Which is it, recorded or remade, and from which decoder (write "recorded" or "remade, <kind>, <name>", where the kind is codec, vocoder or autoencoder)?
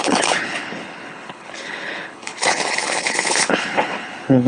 remade, codec, HILCodec